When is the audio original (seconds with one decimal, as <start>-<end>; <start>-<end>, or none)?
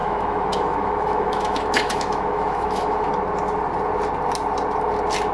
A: 3.1-5.3